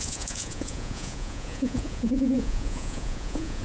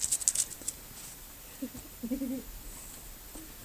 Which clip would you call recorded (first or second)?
second